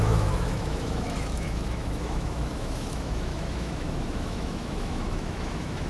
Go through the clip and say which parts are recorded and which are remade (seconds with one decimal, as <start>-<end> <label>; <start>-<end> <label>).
0.0-5.9 remade